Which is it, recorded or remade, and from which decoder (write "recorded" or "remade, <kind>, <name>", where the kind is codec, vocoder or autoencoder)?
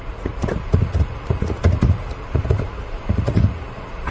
remade, vocoder, Vocos